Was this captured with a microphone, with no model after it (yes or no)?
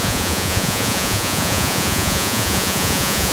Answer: no